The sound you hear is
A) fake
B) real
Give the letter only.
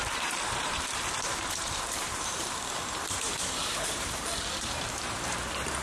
A